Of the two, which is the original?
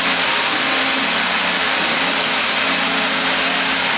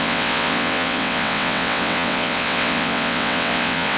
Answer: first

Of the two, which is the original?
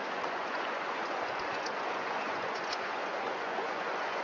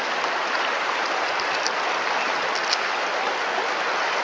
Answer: second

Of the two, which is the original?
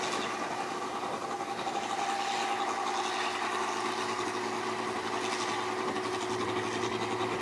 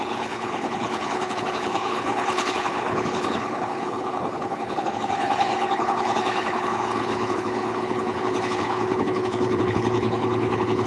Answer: first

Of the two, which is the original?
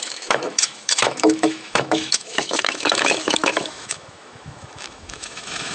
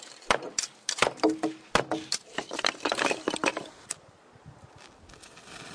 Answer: second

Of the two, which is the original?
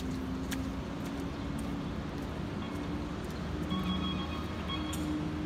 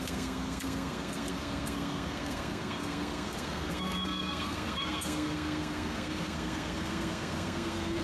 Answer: first